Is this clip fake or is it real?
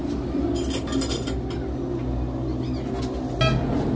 real